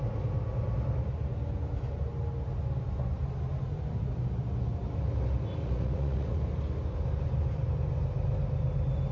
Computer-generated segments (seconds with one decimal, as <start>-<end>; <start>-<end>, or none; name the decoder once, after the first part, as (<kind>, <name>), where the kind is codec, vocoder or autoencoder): 5.6-6.4 (vocoder, Vocos)

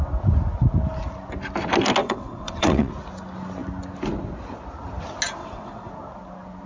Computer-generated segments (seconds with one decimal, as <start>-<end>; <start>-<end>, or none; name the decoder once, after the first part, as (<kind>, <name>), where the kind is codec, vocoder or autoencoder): 2.0-2.9 (vocoder, WaveNeXt); 5.4-5.9

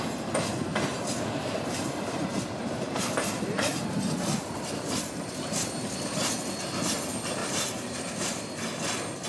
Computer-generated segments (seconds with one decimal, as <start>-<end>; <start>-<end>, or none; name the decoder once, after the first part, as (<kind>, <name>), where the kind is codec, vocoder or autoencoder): 0.9-3.0 (vocoder, BigVGAN v2); 3.7-5.3; 7.4-8.4

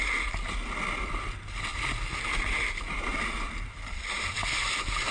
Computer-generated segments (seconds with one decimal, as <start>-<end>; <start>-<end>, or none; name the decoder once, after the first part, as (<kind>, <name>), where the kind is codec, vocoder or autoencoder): none

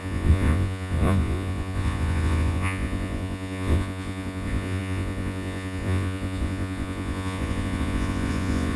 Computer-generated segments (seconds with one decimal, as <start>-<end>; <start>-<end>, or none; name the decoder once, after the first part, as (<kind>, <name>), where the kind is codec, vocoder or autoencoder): 0.0-8.8 (vocoder, Vocos)

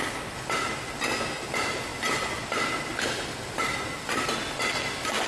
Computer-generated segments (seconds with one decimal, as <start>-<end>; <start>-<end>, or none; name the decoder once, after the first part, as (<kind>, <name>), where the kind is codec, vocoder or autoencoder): none

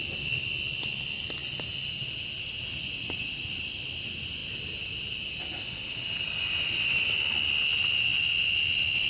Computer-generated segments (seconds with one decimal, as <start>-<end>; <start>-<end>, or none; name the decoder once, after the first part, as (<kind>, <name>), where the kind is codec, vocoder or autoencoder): none